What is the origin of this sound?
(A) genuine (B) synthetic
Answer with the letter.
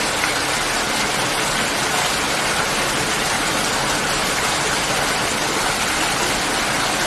A